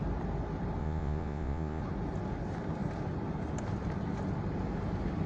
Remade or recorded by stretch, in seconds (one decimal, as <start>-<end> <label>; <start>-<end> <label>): 0.0-0.8 recorded; 0.8-1.8 remade; 1.8-5.3 recorded